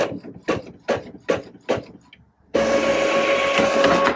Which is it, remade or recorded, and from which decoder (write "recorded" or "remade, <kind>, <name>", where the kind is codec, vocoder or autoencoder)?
recorded